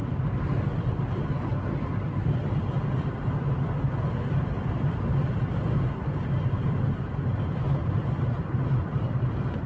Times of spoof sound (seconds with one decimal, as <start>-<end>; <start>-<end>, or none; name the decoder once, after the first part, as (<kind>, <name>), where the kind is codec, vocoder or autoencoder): none